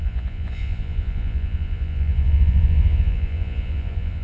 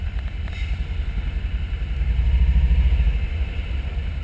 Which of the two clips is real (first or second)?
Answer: second